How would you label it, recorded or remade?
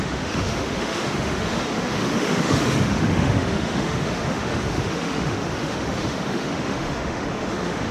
remade